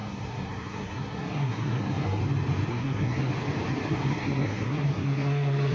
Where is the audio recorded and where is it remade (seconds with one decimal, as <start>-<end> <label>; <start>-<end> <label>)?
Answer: 0.0-2.2 remade; 2.2-2.7 recorded; 2.7-3.3 remade; 3.3-3.9 recorded; 3.9-5.7 remade